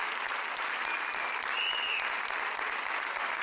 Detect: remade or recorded recorded